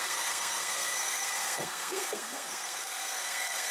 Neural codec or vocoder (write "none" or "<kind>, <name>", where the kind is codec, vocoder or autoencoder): codec, SNAC